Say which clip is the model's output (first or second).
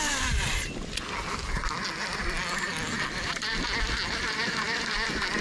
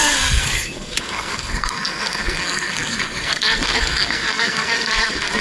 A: second